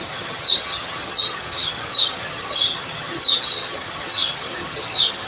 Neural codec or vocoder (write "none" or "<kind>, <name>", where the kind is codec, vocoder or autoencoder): vocoder, HiFi-GAN